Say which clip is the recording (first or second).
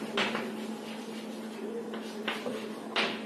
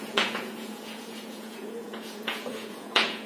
first